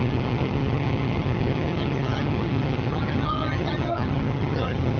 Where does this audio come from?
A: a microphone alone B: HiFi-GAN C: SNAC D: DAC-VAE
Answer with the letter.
B